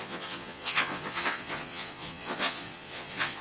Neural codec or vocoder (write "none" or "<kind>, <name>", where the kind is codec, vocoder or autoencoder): vocoder, Vocos